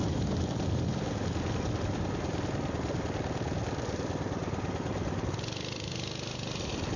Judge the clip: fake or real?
real